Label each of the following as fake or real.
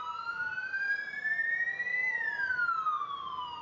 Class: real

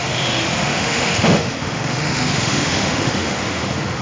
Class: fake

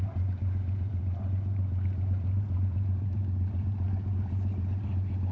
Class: fake